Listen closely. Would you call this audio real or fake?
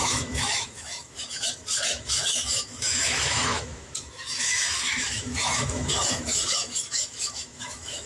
fake